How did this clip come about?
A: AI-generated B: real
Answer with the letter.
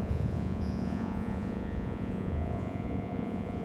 A